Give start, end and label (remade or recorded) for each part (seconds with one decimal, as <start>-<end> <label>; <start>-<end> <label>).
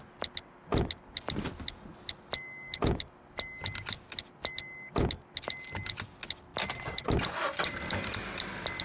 0.0-6.5 recorded; 6.5-8.1 remade; 8.1-8.8 recorded